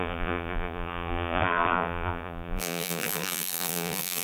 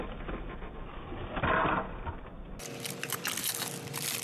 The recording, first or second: second